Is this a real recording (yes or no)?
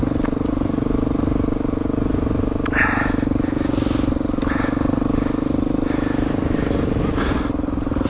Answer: yes